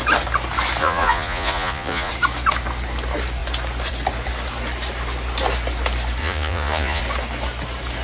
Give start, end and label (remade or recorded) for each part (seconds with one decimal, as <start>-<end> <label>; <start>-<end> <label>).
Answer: 0.0-0.8 recorded; 0.8-2.1 remade; 2.1-6.2 recorded; 6.2-7.0 remade; 7.0-8.0 recorded